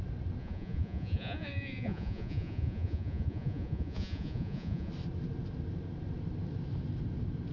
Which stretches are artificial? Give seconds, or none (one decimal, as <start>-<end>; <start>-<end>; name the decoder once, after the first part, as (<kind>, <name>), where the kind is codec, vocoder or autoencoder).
0.4-4.9 (vocoder, Vocos)